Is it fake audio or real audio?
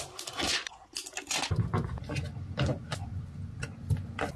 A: real